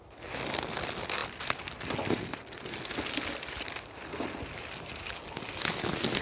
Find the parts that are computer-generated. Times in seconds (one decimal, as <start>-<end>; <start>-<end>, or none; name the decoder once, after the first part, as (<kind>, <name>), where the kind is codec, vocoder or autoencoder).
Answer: none

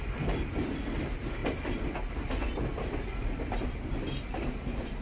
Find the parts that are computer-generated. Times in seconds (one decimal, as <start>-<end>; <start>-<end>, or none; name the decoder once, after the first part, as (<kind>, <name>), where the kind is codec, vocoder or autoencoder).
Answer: none